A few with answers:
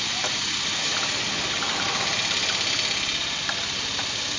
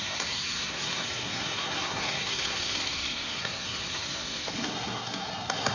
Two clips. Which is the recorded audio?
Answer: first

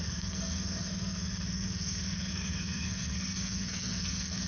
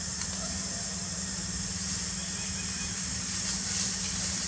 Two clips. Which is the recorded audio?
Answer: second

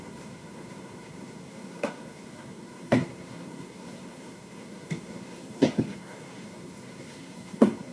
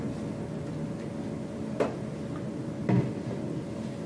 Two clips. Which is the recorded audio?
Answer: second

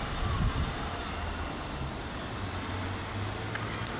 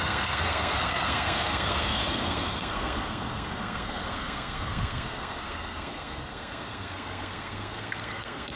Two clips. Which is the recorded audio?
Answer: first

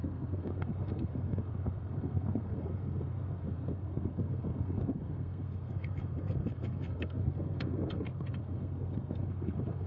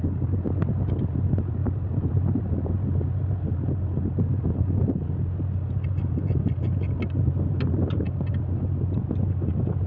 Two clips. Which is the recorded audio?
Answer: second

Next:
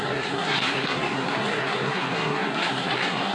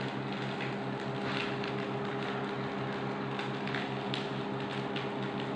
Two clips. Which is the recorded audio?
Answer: second